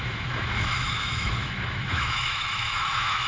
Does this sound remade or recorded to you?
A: remade